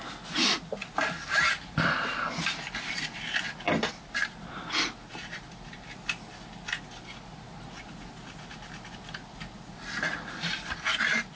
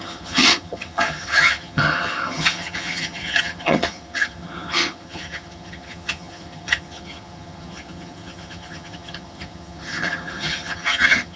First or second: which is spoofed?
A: second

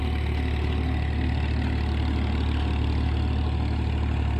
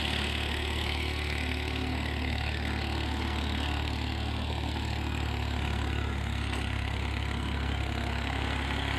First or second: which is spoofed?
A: second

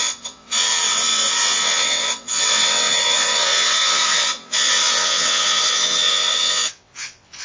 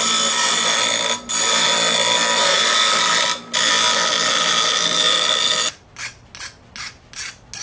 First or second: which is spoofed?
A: first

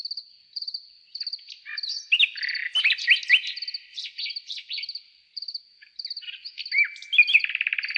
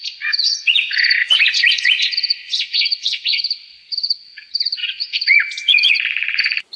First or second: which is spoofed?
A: second